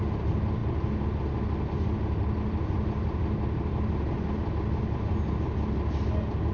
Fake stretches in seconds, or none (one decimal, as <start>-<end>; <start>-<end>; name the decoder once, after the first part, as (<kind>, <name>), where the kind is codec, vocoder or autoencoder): none